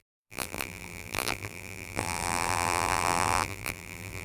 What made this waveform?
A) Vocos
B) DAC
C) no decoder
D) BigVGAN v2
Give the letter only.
D